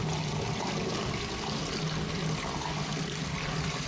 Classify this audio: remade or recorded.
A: recorded